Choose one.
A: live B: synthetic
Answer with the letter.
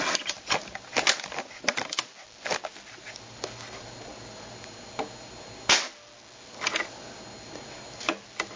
A